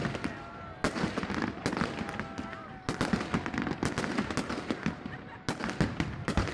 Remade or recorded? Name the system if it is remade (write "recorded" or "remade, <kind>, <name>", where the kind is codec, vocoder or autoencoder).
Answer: recorded